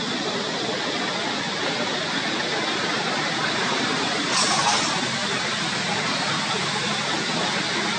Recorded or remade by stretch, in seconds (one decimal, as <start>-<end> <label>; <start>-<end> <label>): 0.0-2.7 recorded; 2.7-4.7 remade; 4.7-8.0 recorded